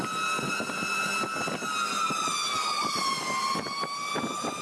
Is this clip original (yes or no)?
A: yes